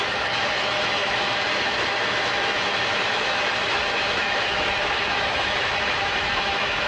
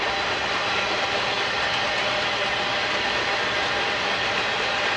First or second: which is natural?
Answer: second